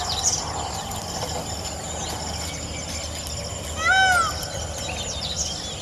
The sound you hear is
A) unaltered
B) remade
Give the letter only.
A